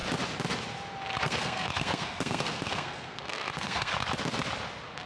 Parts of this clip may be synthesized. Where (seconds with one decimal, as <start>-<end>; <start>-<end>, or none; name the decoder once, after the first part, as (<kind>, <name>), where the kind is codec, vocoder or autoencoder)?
1.2-3.9 (codec, SNAC)